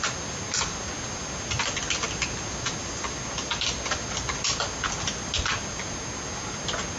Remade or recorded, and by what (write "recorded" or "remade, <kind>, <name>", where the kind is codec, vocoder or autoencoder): recorded